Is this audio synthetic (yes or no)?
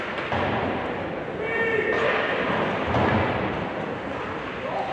no